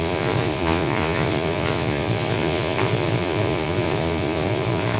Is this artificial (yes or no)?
yes